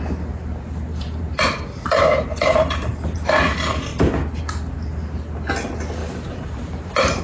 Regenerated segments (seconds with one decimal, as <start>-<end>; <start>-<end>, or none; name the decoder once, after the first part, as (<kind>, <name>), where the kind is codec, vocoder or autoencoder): 0.9-3.3 (vocoder, BigVGAN v2); 6.0-7.2